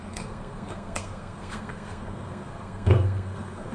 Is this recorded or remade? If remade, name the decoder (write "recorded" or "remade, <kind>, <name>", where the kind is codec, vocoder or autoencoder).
remade, codec, SNAC